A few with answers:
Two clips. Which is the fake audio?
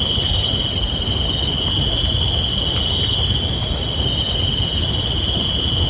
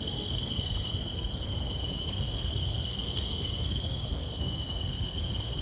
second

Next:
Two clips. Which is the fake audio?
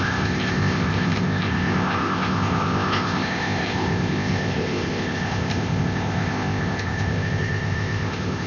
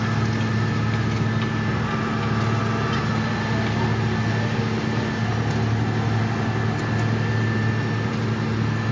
first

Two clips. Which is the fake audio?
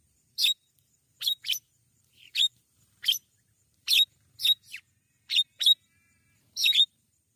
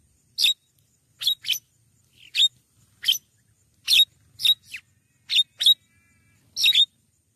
first